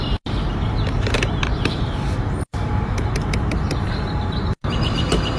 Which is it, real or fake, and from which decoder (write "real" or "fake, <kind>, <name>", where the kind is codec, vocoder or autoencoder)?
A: fake, vocoder, BigVGAN v2